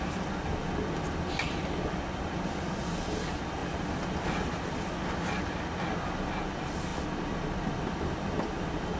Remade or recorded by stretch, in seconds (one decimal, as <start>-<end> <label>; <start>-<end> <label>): 0.0-9.0 recorded